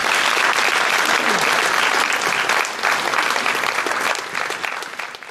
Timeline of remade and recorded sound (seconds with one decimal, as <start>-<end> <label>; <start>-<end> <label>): 0.0-5.3 recorded